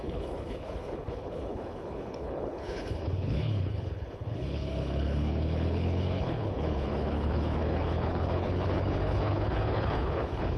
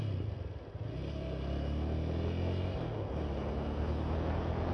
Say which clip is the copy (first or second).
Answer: first